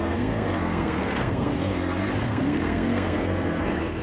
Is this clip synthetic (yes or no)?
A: yes